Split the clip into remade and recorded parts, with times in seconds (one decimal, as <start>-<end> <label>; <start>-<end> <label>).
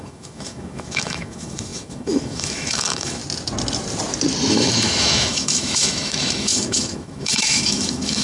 0.0-3.2 remade; 3.2-4.5 recorded; 4.5-8.2 remade